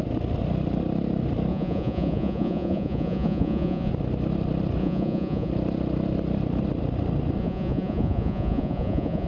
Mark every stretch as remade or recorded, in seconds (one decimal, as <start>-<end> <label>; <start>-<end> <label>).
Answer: 0.0-1.5 recorded; 1.5-3.9 remade; 3.9-4.8 recorded; 4.8-5.5 remade; 5.5-7.4 recorded; 7.4-9.3 remade